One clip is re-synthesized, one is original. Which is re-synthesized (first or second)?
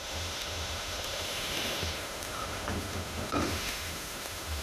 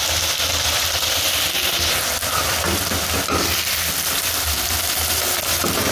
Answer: first